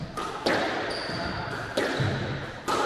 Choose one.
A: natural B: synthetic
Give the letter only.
A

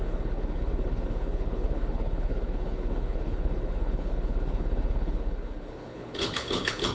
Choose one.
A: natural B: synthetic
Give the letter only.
B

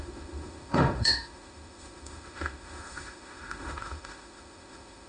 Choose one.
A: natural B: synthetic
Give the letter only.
B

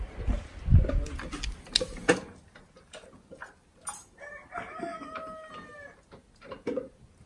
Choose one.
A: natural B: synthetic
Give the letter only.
A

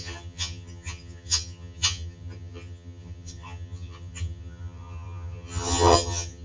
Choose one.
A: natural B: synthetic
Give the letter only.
B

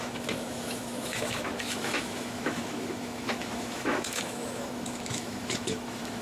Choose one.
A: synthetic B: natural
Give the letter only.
A